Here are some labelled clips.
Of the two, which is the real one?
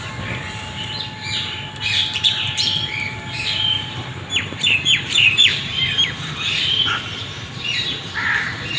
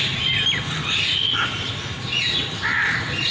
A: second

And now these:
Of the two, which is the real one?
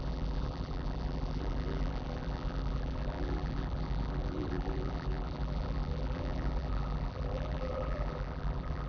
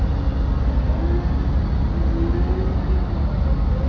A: second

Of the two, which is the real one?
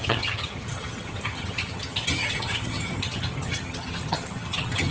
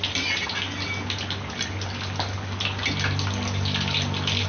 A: second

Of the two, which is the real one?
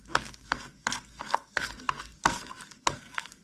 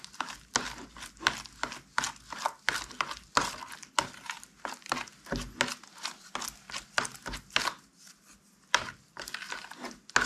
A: second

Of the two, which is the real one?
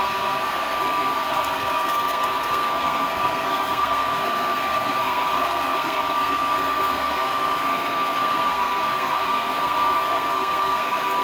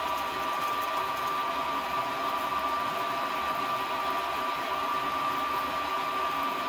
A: second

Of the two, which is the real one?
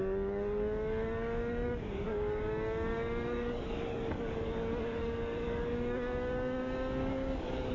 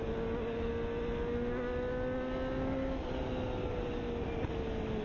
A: second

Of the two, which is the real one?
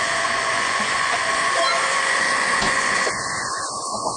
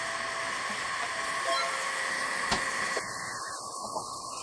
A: second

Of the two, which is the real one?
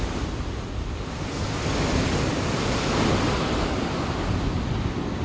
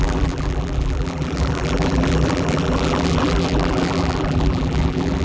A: first